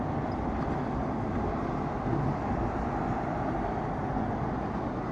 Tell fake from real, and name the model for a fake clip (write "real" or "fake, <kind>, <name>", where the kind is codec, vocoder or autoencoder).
real